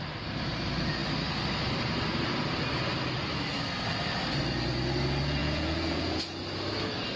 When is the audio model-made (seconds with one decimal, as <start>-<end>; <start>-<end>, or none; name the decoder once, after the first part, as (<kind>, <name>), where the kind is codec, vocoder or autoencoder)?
5.4-6.2 (vocoder, Vocos)